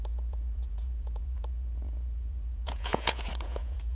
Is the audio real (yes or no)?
no